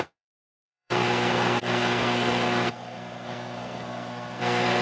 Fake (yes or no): yes